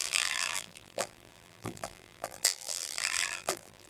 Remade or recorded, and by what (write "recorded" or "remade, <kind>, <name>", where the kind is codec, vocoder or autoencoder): remade, vocoder, BigVGAN v2